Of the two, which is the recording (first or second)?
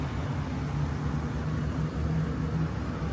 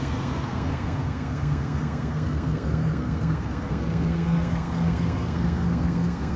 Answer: first